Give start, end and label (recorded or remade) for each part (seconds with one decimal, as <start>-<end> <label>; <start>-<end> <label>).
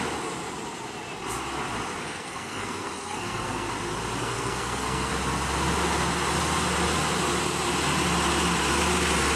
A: 0.0-2.0 recorded; 2.0-3.7 remade; 3.7-4.2 recorded; 4.2-5.1 remade; 5.1-9.4 recorded